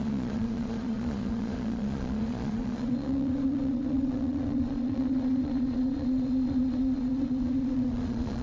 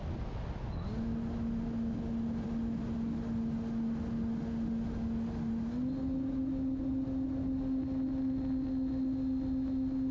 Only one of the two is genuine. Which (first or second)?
second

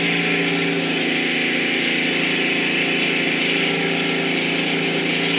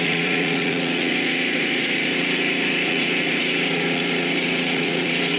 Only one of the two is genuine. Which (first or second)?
first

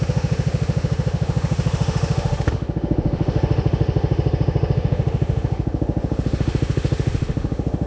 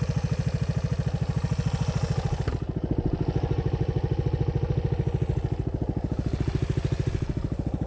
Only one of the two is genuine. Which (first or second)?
second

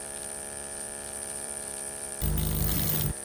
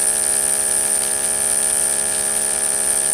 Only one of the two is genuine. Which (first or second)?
second